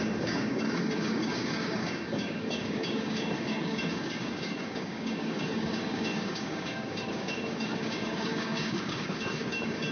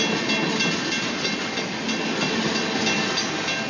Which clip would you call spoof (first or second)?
first